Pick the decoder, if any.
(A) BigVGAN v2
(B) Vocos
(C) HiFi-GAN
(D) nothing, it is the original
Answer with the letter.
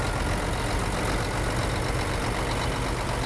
D